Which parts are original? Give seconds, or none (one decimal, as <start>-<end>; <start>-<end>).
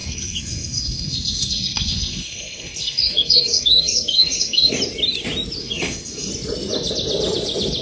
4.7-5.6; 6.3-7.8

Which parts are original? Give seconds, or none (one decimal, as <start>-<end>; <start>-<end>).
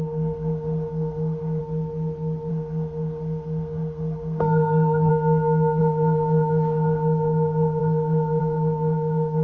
1.6-2.5; 5.1-5.8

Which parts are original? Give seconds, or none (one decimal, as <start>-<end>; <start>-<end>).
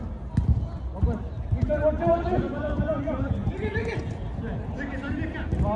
0.0-5.8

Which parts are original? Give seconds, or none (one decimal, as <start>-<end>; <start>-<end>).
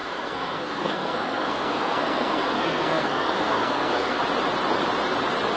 4.2-5.6